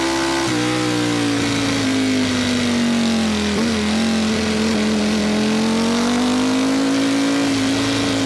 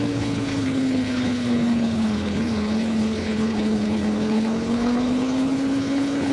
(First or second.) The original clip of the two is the first